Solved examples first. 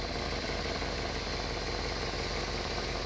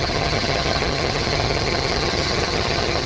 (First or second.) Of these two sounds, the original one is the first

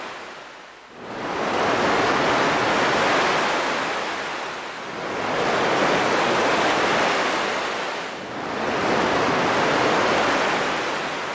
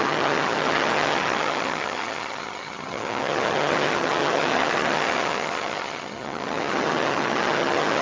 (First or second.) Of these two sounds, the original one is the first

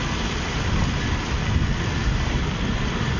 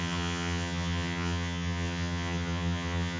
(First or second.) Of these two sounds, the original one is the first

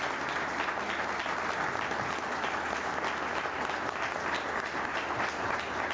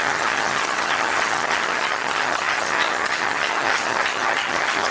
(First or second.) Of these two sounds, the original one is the first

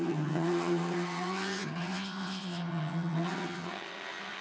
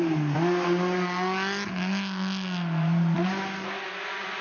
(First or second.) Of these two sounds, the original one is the second